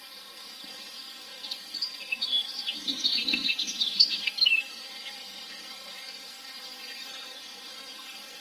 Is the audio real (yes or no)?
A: no